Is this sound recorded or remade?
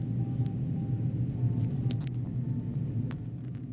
recorded